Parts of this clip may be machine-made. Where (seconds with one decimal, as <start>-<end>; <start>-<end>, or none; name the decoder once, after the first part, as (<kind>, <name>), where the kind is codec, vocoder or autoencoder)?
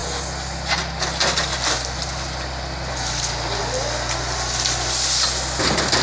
none